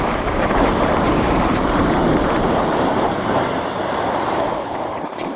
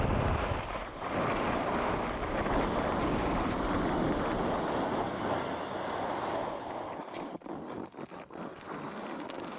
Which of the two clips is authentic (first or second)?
second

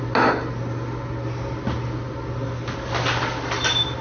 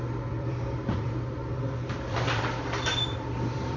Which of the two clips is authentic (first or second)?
first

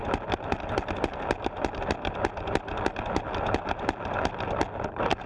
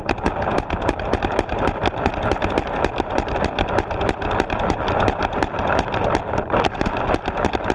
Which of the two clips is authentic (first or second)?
first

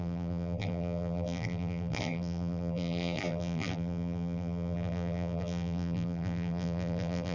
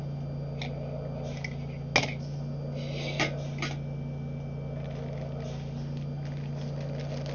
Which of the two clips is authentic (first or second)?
second